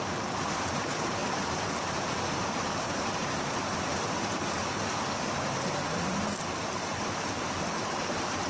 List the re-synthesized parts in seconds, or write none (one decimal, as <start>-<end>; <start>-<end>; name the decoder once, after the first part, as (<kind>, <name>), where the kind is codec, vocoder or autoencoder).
0.0-8.5 (vocoder, BigVGAN v2)